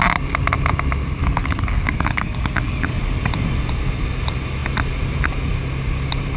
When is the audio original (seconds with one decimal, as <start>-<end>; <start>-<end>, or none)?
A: 0.0-1.2; 3.0-6.4